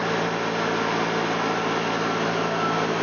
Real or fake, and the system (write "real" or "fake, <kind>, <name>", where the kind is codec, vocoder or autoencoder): real